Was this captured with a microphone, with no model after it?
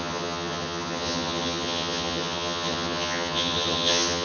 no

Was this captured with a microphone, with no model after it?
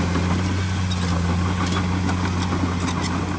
yes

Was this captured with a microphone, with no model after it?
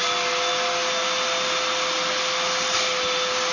yes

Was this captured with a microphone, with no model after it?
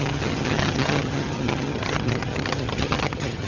no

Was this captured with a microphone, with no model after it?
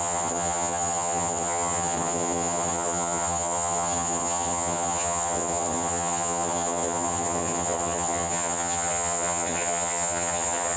no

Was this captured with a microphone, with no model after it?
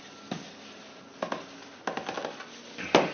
yes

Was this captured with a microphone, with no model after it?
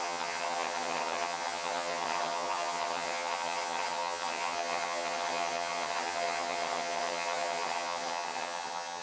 no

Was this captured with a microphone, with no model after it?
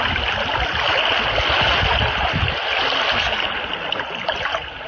yes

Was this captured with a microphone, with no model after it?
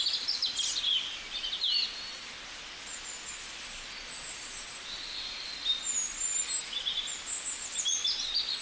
yes